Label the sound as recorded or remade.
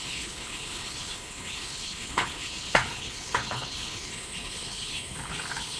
remade